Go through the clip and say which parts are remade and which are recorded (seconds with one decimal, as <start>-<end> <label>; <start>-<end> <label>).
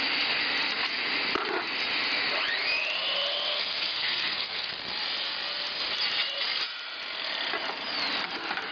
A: 0.0-3.5 recorded; 3.5-4.7 remade; 4.7-8.7 recorded